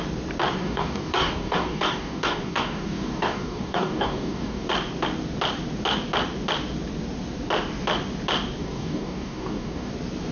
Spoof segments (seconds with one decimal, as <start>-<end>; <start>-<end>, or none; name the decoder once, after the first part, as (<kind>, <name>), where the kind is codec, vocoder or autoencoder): 0.6-4.7 (codec, DAC); 8.6-9.9